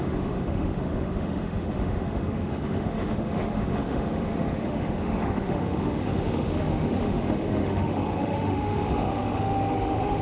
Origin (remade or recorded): remade